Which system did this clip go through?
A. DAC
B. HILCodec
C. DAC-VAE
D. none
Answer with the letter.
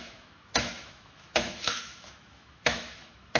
C